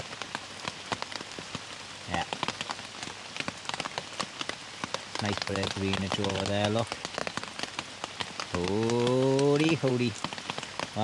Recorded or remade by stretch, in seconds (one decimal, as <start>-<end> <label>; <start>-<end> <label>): 0.0-11.0 recorded